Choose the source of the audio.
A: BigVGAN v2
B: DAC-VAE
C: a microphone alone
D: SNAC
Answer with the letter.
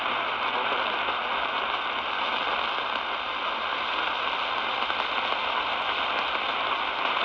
C